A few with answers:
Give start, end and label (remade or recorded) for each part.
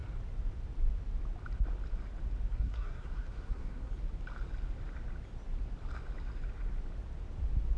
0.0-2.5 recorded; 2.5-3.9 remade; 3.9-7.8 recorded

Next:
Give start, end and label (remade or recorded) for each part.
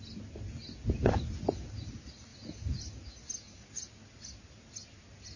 0.0-5.4 recorded